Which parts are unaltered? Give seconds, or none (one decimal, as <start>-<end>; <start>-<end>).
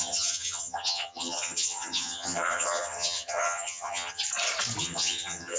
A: 4.2-4.8